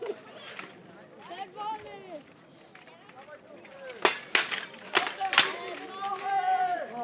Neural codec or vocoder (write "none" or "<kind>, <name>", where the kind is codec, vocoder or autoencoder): none